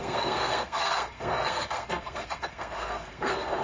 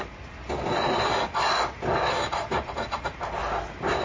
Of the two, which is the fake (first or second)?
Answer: first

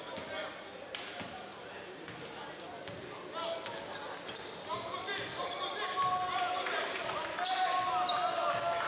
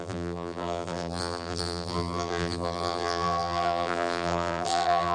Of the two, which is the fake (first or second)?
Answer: second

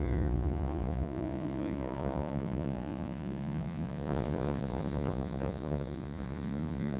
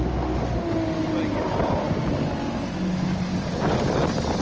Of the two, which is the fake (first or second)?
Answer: first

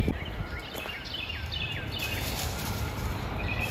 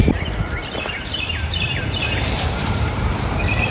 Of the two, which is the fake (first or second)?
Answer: second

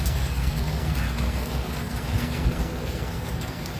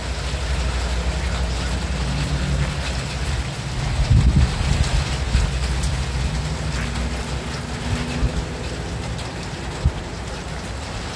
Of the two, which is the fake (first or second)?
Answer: first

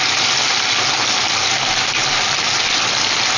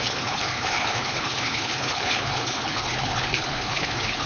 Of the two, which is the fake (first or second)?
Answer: second